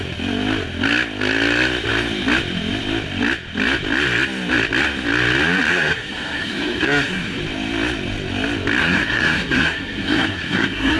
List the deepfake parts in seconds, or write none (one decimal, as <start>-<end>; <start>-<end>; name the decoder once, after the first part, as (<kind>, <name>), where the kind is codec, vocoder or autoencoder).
5.7-7.4 (codec, SNAC); 8.8-11.0